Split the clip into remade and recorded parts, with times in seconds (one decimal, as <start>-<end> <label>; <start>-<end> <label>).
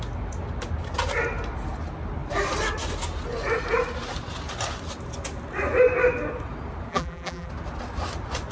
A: 0.0-6.9 recorded; 6.9-7.5 remade; 7.5-8.5 recorded